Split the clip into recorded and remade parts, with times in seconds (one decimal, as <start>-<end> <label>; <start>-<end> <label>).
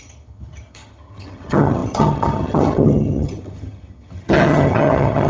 0.0-5.3 remade